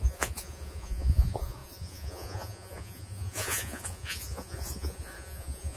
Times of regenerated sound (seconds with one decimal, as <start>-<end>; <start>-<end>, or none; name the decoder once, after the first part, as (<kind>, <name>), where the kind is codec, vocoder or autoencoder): 0.0-5.8 (vocoder, Vocos)